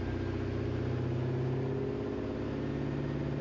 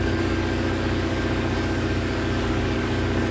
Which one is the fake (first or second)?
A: second